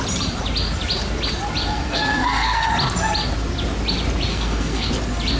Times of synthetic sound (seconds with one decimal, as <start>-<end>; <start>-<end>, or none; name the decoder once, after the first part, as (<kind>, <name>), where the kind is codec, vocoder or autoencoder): 1.7-2.7 (codec, SNAC); 4.3-4.9